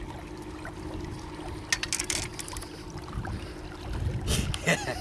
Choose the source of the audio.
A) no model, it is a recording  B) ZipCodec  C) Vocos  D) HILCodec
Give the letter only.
A